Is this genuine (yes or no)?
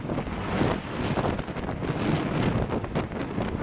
yes